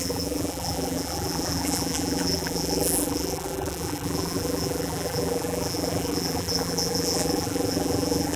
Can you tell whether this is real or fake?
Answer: fake